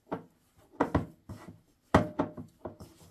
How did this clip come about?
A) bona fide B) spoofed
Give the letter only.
A